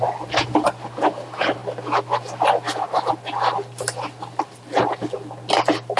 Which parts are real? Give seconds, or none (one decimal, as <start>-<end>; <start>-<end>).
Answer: 0.0-6.0